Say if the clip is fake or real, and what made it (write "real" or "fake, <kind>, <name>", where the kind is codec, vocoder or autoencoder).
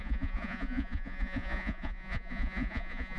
fake, vocoder, Vocos